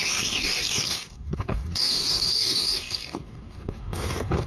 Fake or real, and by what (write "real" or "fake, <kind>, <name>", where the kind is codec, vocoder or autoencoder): fake, codec, DAC